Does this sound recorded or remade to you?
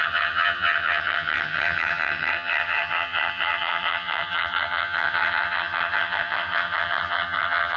remade